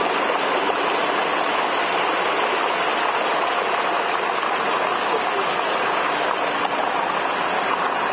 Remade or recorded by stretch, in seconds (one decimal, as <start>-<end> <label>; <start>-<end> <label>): 0.0-8.1 recorded